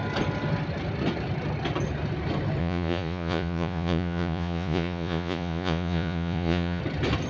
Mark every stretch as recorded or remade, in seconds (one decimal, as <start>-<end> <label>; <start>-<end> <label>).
0.0-2.6 recorded; 2.6-6.8 remade; 6.8-7.3 recorded